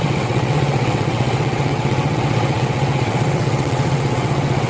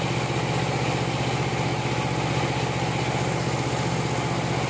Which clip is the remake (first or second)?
first